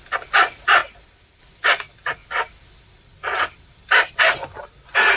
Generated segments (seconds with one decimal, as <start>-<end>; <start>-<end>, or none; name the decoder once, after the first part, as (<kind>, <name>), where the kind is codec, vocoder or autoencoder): none